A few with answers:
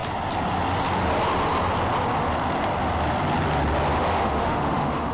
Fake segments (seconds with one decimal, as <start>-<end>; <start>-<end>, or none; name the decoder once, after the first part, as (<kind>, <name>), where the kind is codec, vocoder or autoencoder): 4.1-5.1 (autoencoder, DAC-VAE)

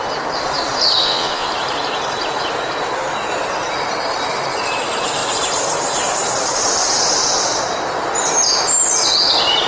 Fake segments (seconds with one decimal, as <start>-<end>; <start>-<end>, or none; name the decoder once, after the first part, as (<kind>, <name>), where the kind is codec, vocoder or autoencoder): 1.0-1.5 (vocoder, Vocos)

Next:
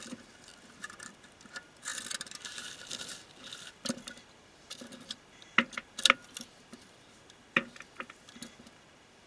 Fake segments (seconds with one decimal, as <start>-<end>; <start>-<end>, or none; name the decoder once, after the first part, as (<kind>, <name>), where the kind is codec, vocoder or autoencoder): none

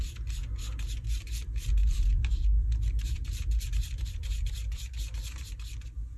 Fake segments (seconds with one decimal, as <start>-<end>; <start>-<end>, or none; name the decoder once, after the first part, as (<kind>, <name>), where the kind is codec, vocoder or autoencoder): 1.8-5.5 (vocoder, BigVGAN v2)

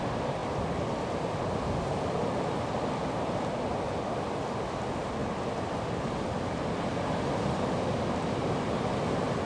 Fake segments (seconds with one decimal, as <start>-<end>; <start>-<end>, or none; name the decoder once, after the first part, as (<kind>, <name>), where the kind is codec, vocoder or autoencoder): none